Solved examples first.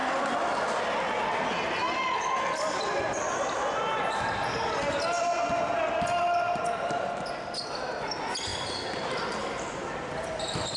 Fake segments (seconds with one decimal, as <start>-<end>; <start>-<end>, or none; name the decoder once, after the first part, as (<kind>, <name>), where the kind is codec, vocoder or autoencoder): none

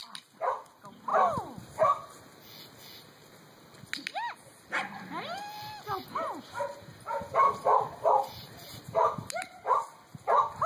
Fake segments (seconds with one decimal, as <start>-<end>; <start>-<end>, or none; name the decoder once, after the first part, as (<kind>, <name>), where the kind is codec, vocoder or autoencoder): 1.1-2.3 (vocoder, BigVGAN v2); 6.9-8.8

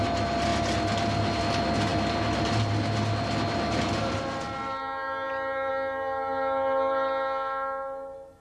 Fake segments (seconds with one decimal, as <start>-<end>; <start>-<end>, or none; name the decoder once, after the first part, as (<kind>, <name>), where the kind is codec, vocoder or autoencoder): none

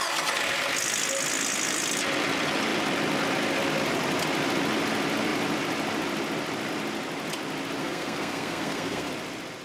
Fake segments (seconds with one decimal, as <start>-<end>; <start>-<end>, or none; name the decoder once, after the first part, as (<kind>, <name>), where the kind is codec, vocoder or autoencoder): 7.8-9.1 (codec, SNAC)

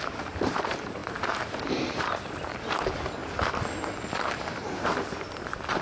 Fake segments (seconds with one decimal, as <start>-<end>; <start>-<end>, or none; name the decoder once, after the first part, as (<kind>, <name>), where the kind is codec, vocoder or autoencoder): 0.0-3.2 (vocoder, BigVGAN v2); 4.5-5.8